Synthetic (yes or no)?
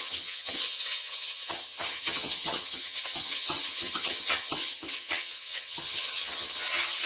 yes